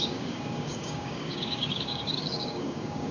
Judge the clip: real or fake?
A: fake